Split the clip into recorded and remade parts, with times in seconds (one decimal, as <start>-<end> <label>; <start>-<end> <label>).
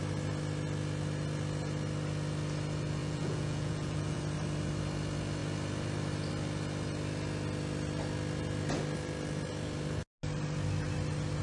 0.0-3.0 recorded; 3.0-4.2 remade; 4.2-11.4 recorded